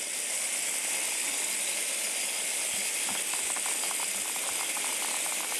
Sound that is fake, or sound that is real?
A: real